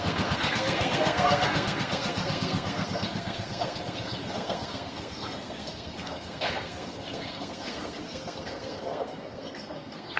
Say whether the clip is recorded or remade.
remade